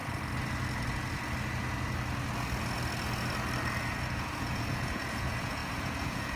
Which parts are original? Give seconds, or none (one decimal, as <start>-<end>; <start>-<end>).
0.0-3.8